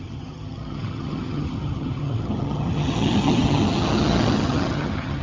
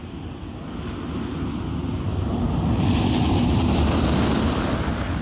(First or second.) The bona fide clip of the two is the second